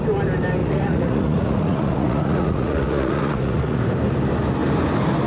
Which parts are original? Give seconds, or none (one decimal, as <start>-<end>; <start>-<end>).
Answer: 0.0-0.6; 3.8-5.3

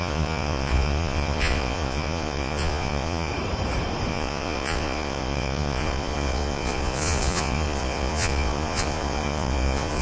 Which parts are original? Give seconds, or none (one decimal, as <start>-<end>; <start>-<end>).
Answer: 3.3-4.1

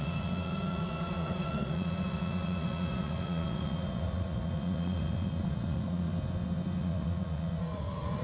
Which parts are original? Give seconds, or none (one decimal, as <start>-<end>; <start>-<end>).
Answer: 6.1-6.8

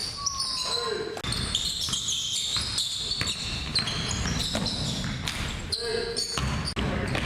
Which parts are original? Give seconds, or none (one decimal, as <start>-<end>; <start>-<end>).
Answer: 0.0-5.9; 6.4-7.3

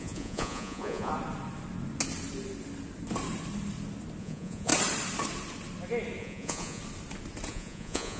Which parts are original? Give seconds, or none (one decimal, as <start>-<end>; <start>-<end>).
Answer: 1.1-4.2; 4.7-6.2; 6.8-7.5

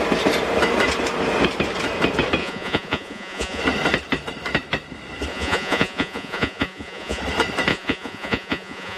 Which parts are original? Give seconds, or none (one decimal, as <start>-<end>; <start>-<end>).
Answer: 0.0-2.4; 3.6-5.3; 7.2-7.7

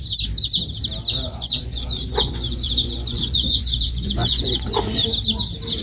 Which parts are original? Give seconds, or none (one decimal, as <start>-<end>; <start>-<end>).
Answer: 0.0-1.2; 4.7-5.8

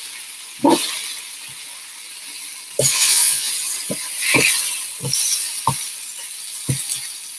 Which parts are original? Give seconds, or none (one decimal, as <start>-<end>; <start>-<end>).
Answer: 0.0-2.9; 3.5-7.4